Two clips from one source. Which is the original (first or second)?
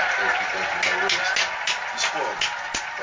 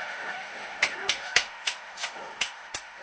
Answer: first